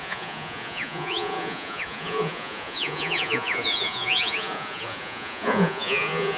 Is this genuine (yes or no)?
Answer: no